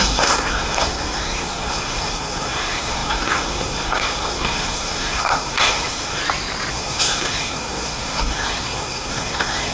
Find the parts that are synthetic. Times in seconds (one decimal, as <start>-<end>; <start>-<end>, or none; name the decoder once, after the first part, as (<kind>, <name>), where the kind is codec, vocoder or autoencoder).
0.0-6.2 (codec, SNAC); 6.7-9.7